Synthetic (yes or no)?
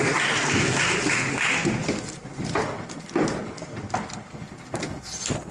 no